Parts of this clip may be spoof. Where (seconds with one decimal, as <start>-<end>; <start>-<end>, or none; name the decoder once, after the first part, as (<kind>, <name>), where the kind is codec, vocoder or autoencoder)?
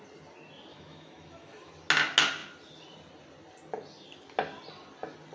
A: 0.7-1.7 (autoencoder, DAC-VAE)